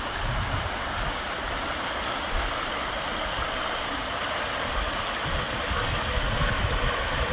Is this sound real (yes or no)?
yes